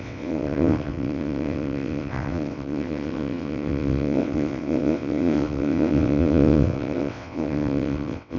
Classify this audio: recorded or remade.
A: remade